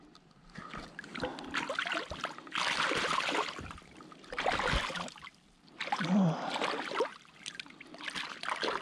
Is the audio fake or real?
real